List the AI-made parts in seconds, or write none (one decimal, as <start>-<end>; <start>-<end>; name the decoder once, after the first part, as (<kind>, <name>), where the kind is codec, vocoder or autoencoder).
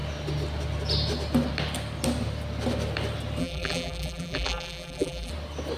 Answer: 3.4-5.3 (vocoder, BigVGAN v2)